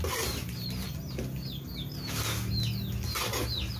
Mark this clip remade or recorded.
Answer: recorded